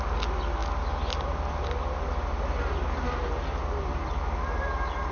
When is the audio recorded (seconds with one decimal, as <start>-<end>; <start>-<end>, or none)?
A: 0.0-5.1